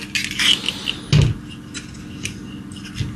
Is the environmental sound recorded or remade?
recorded